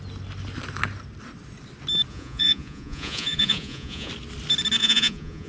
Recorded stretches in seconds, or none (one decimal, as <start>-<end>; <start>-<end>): 0.0-2.1; 4.1-4.8